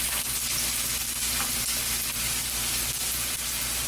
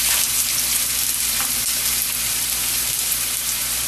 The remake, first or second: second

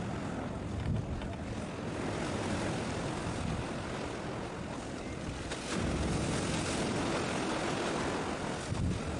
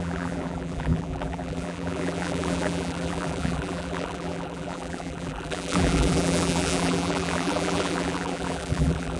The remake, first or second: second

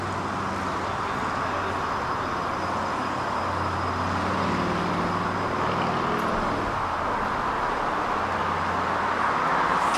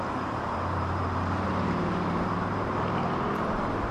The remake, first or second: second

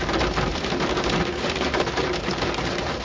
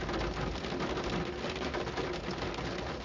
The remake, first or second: first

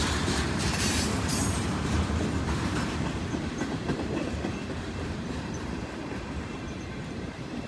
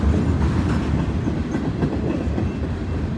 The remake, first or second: first